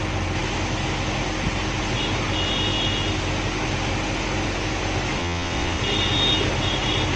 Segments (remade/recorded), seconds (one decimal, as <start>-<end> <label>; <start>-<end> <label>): 0.0-5.2 recorded; 5.2-5.8 remade; 5.8-7.2 recorded